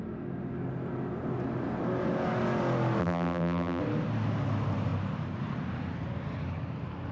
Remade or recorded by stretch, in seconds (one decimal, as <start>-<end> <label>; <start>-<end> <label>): 0.0-3.0 recorded; 3.0-3.8 remade; 3.8-7.1 recorded